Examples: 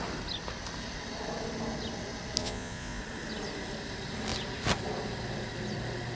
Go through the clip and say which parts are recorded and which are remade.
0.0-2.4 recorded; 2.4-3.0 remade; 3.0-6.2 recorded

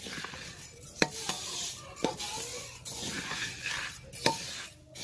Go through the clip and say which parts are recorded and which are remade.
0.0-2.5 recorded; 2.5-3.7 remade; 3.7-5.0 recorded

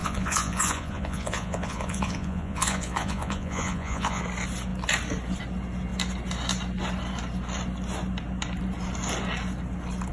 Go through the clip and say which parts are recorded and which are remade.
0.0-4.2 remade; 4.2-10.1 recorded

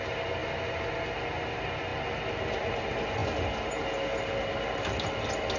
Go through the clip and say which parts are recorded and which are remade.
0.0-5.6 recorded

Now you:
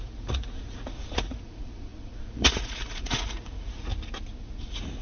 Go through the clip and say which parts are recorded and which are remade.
0.0-3.9 remade; 3.9-4.4 recorded; 4.4-5.0 remade